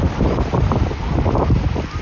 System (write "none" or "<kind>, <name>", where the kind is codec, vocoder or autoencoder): none